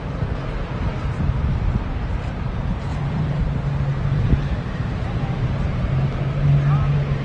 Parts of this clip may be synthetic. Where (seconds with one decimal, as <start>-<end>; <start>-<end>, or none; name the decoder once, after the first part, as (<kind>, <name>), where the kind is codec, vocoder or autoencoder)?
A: 2.9-3.4 (vocoder, BigVGAN v2); 3.9-5.8